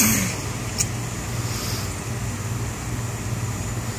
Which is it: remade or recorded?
recorded